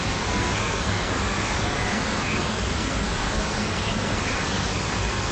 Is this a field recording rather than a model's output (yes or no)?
no